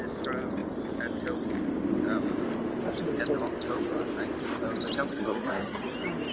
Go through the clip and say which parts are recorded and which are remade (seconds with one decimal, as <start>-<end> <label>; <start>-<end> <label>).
0.0-5.1 recorded; 5.1-5.8 remade; 5.8-6.3 recorded